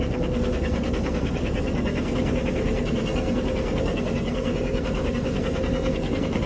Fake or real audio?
fake